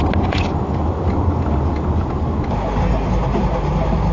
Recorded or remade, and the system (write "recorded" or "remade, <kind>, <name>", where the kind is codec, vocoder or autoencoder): recorded